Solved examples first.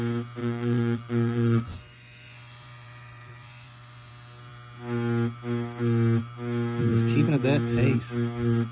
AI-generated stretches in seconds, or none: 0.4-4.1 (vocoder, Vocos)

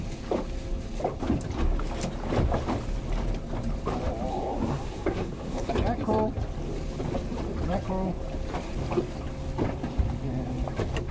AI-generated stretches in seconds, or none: 4.3-5.7 (codec, SNAC)

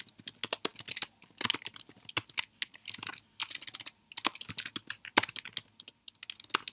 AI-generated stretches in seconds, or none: none

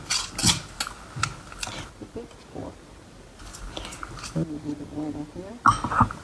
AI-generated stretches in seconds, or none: none

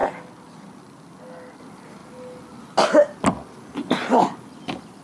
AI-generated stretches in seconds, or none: none

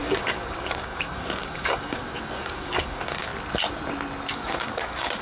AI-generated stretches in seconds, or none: 0.0-3.3 (codec, DAC); 4.3-5.2

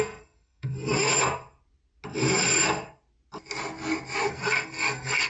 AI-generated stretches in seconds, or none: 0.0-1.1 (codec, SNAC); 4.3-5.3

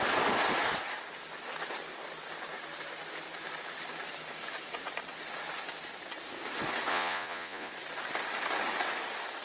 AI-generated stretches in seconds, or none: 6.9-7.7 (vocoder, Vocos)